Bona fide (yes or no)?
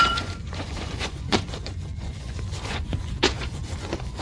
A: no